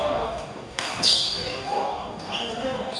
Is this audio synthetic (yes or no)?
yes